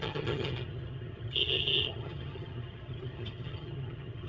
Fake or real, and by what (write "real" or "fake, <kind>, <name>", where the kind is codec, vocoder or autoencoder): fake, vocoder, HiFi-GAN